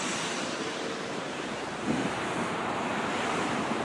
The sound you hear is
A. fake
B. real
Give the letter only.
A